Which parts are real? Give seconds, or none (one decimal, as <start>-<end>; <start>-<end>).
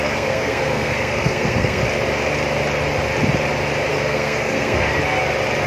1.8-3.9; 4.9-5.7